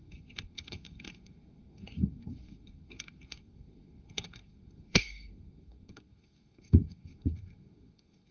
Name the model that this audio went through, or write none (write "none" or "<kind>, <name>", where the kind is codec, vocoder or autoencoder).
codec, SNAC